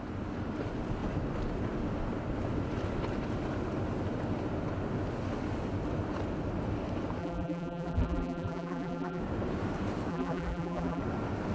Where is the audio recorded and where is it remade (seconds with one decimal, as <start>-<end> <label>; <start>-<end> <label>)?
0.0-7.2 recorded; 7.2-9.2 remade; 9.2-10.1 recorded; 10.1-11.0 remade; 11.0-11.5 recorded